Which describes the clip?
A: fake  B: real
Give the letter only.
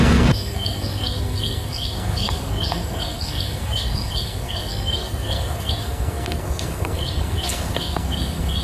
A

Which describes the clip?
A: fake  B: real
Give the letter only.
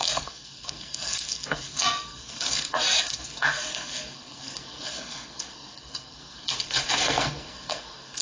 A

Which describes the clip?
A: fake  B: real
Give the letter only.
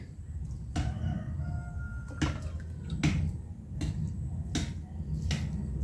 B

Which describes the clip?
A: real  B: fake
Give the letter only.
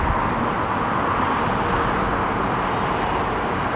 A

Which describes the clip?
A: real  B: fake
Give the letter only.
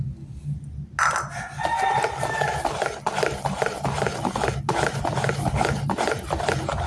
A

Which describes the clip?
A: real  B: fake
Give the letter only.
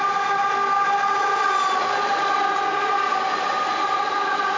A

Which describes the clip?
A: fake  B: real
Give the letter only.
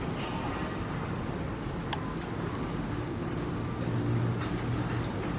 B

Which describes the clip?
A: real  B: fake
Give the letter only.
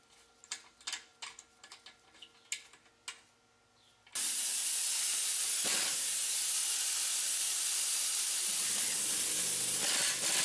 A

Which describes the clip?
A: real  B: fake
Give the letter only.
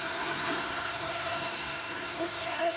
B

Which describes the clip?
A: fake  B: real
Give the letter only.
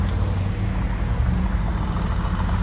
B